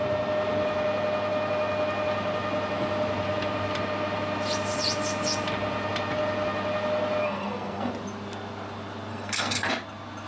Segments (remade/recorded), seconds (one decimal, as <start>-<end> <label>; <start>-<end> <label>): 0.0-7.2 recorded; 7.2-7.9 remade; 7.9-9.1 recorded; 9.1-9.7 remade; 9.7-10.3 recorded